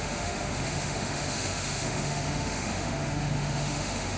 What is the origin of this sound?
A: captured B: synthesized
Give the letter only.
B